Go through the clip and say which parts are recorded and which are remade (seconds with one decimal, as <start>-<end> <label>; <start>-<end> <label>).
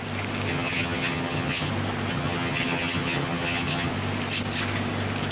0.0-0.5 recorded; 0.5-1.7 remade; 1.7-2.1 recorded; 2.1-3.9 remade; 3.9-5.3 recorded